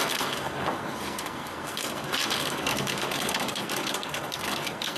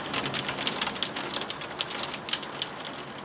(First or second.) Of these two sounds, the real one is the second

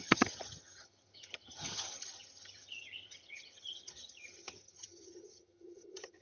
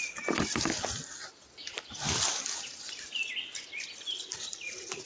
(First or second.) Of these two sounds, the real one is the second